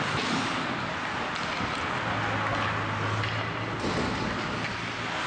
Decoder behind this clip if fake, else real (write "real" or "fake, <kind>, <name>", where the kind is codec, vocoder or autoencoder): real